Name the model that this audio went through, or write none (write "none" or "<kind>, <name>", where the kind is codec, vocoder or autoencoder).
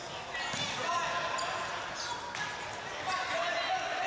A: none